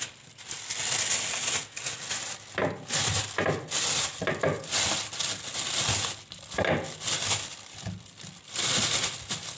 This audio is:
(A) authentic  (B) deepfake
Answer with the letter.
A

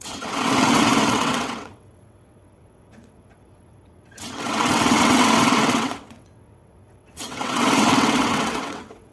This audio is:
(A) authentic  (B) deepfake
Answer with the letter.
B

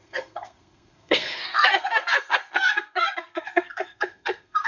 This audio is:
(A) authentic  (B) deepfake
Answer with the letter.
B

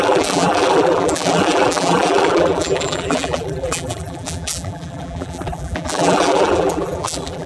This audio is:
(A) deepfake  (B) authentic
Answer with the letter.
A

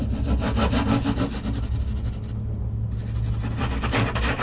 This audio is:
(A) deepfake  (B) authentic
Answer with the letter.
B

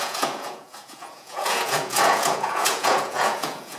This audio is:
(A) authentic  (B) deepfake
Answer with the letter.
B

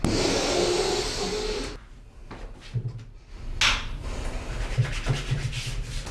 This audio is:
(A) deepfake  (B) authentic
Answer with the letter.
B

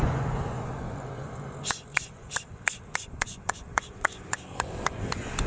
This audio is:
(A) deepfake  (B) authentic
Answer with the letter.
A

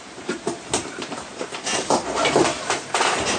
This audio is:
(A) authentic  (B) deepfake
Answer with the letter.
B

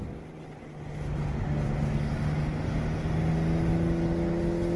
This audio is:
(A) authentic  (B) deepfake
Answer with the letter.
A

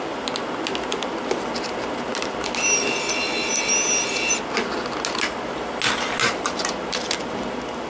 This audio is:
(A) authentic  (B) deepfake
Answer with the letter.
A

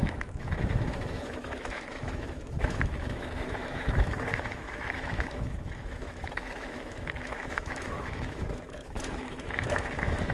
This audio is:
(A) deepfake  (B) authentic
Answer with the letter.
A